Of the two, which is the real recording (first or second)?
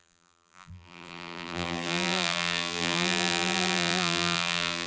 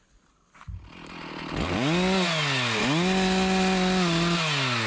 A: second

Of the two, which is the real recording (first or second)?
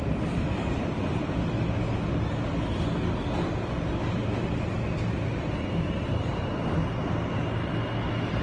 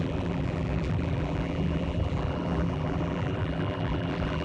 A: first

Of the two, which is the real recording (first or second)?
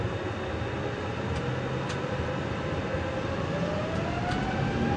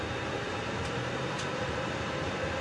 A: first